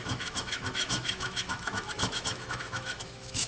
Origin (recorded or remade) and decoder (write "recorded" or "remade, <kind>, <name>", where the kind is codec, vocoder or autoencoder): remade, autoencoder, DAC-VAE